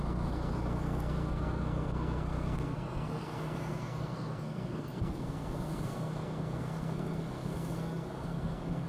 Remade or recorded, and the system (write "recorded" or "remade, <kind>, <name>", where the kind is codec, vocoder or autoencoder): remade, codec, SNAC